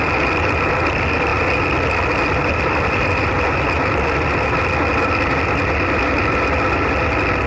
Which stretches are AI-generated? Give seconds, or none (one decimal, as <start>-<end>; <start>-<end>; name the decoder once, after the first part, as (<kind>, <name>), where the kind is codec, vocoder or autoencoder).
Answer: none